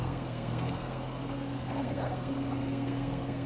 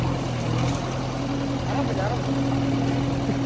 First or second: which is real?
second